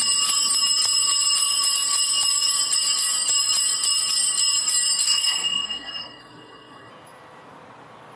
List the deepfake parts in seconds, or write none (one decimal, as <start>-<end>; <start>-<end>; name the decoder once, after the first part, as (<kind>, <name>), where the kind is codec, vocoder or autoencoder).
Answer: 5.0-6.9 (codec, SNAC)